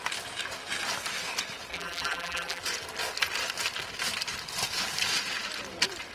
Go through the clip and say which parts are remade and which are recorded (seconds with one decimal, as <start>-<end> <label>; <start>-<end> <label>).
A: 0.0-1.7 recorded; 1.7-2.6 remade; 2.6-6.1 recorded